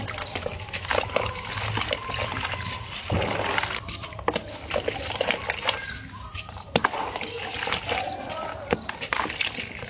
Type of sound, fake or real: real